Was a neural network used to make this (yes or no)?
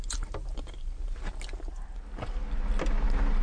no